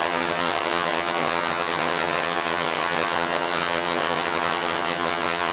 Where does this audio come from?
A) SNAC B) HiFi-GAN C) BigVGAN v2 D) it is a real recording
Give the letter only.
B